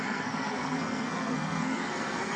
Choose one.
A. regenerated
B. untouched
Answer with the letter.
A